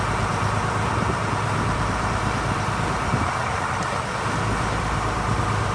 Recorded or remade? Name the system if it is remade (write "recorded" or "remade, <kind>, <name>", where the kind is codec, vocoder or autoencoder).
remade, vocoder, BigVGAN v2